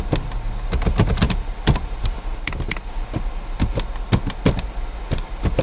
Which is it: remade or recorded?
recorded